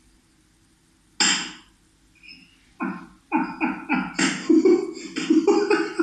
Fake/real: real